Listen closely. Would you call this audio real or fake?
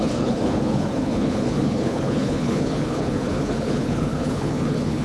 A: fake